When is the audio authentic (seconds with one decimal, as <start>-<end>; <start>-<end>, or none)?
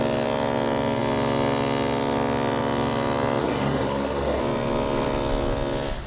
0.0-3.4; 4.4-6.1